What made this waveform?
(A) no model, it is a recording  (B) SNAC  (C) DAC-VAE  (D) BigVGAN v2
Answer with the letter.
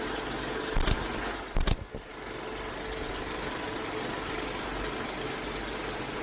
A